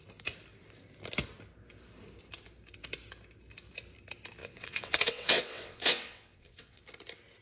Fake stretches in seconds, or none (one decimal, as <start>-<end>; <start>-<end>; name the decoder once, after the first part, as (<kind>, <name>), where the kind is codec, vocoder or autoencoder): 4.4-6.8 (vocoder, WaveNeXt)